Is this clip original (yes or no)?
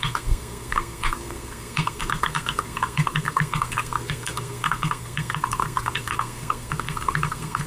no